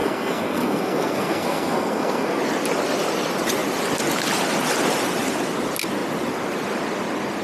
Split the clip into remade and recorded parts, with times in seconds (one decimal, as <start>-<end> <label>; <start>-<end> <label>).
0.0-2.4 remade; 2.4-7.4 recorded